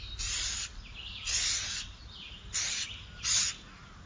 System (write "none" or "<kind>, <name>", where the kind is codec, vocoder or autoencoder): none